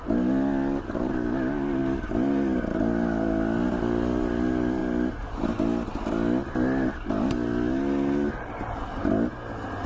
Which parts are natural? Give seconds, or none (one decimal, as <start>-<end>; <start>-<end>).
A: 0.0-9.9